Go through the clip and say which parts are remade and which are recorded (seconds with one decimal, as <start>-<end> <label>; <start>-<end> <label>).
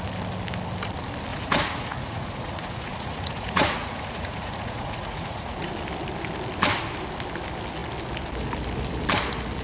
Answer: 0.0-1.3 recorded; 1.3-5.7 remade; 5.7-9.6 recorded